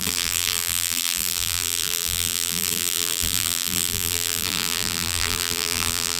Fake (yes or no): yes